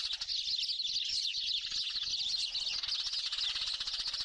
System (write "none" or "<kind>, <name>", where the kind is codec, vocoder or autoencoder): none